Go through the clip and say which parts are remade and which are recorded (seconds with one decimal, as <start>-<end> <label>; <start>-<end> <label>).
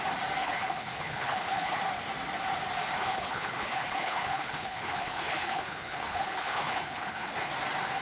0.0-0.4 recorded; 0.4-1.8 remade; 1.8-3.0 recorded; 3.0-7.5 remade; 7.5-8.0 recorded